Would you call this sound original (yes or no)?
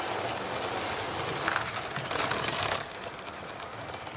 yes